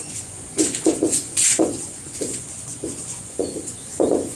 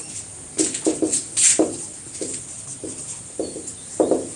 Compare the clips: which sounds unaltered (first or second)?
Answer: second